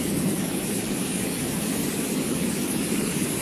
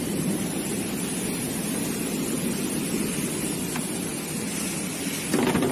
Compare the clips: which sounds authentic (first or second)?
second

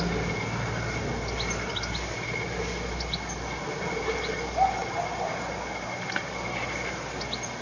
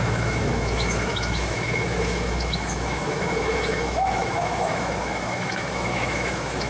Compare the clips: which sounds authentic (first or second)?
first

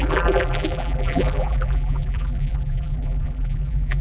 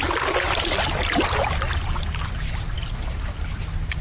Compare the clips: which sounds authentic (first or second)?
second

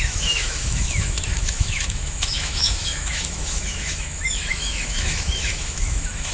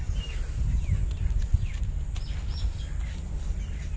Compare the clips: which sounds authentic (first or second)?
second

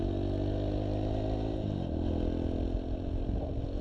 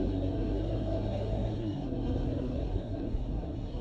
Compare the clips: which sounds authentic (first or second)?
first